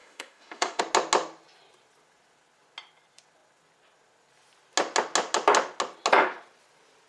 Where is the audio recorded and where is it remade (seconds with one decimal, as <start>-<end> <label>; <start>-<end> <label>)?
0.0-0.8 remade; 0.8-7.1 recorded